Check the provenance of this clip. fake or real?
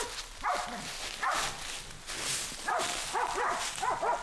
real